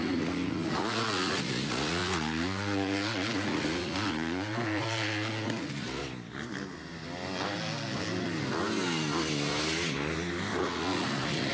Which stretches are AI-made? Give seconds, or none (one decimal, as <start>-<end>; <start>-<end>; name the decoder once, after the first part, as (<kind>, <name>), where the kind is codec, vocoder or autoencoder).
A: 0.0-6.0 (vocoder, Vocos); 10.6-11.5